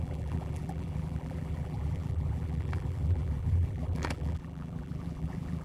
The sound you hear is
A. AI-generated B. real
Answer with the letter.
A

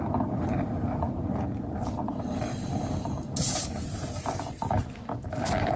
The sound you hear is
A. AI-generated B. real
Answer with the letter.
A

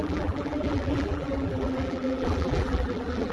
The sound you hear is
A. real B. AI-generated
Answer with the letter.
B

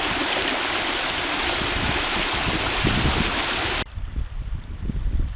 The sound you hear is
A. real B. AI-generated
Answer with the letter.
A